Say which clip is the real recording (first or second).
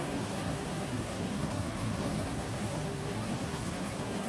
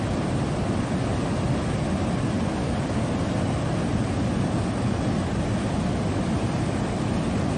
second